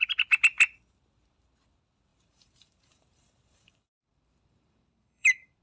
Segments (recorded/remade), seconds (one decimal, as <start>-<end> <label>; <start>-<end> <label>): 0.0-2.1 recorded; 2.1-5.6 remade